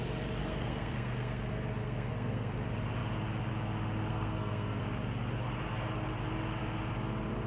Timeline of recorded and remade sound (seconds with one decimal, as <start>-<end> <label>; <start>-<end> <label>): 0.0-0.4 recorded; 0.4-1.4 remade; 1.4-1.8 recorded; 1.8-2.5 remade; 2.5-4.1 recorded; 4.1-4.8 remade; 4.8-7.5 recorded